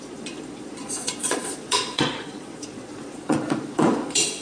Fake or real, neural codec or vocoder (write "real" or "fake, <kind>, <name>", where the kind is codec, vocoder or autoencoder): fake, vocoder, Vocos